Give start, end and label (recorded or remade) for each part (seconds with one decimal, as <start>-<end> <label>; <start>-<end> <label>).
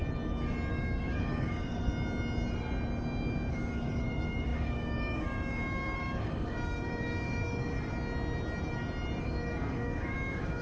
0.0-0.7 recorded; 0.7-1.9 remade; 1.9-3.5 recorded; 3.5-7.7 remade; 7.7-9.2 recorded; 9.2-10.6 remade